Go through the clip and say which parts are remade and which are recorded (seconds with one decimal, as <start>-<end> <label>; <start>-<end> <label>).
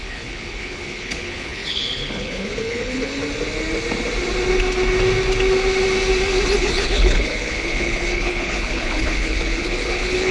0.0-3.2 remade; 3.2-6.6 recorded; 6.6-10.3 remade